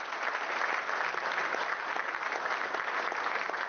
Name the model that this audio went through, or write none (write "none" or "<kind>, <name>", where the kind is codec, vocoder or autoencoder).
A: none